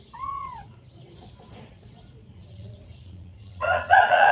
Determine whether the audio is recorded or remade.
remade